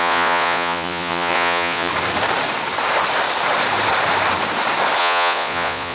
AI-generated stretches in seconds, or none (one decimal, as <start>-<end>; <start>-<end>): 0.0-1.9; 5.0-5.9